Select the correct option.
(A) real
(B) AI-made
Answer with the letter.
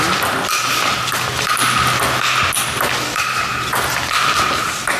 A